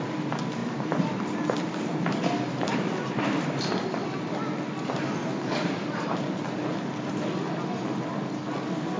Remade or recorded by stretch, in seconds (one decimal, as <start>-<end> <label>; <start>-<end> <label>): 0.0-0.6 recorded; 0.6-3.7 remade; 3.7-5.2 recorded; 5.2-6.6 remade; 6.6-9.0 recorded